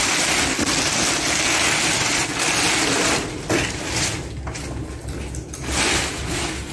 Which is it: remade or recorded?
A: recorded